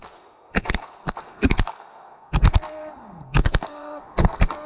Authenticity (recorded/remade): remade